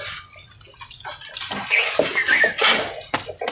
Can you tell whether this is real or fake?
real